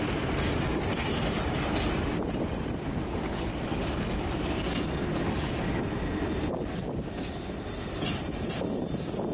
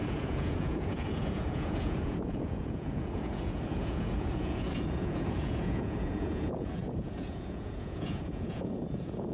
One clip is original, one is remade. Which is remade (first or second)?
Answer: second